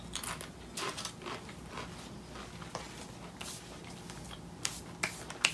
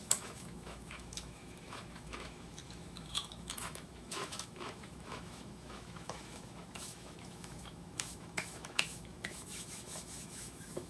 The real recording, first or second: first